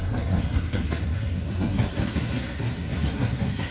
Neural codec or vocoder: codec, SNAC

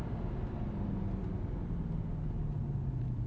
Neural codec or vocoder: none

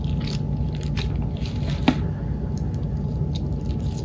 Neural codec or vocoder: none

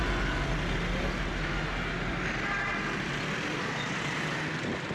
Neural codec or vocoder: none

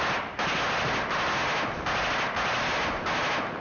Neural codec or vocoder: none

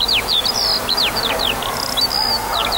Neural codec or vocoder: none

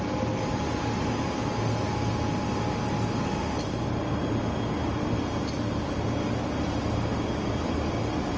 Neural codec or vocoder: none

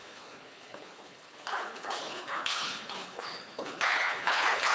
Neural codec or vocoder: codec, HILCodec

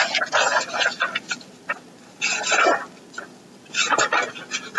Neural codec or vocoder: none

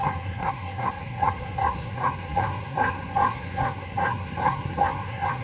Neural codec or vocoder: codec, SNAC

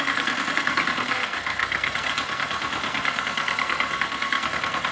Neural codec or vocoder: codec, SNAC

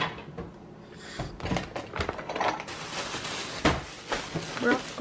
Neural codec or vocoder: none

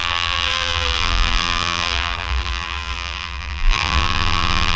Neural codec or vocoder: vocoder, BigVGAN v2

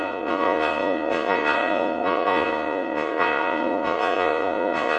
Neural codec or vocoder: vocoder, Vocos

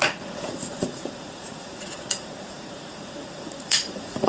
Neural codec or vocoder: vocoder, Vocos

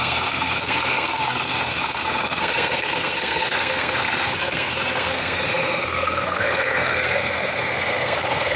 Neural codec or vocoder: codec, SNAC